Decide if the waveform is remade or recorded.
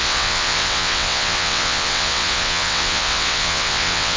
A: remade